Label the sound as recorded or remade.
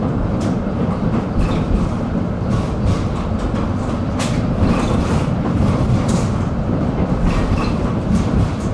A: remade